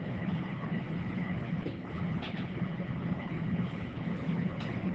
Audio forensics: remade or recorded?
remade